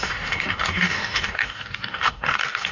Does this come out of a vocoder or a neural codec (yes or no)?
yes